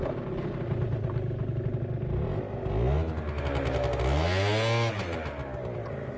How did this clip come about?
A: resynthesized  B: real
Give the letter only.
B